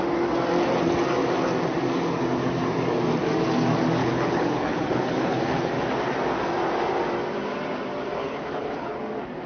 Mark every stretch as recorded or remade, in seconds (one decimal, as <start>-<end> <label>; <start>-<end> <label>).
0.0-4.0 recorded; 4.0-5.7 remade; 5.7-8.2 recorded; 8.2-9.0 remade; 9.0-9.5 recorded